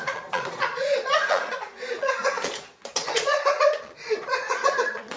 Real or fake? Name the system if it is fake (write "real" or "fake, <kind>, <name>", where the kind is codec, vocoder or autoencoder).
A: fake, vocoder, Vocos